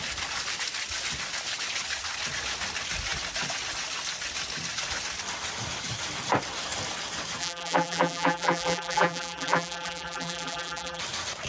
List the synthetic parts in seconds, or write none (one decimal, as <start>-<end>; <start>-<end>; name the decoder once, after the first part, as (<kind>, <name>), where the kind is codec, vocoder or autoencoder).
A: 7.4-11.0 (vocoder, BigVGAN v2)